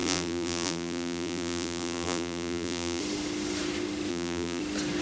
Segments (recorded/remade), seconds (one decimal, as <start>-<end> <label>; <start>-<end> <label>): 0.0-3.0 remade; 3.0-4.1 recorded; 4.1-4.6 remade; 4.6-5.0 recorded